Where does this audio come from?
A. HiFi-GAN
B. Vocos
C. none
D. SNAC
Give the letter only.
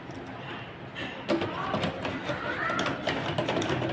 C